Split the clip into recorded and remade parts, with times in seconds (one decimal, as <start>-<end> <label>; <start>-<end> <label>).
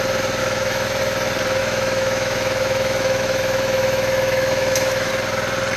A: 0.0-0.4 recorded; 0.4-1.0 remade; 1.0-1.6 recorded; 1.6-5.1 remade; 5.1-5.8 recorded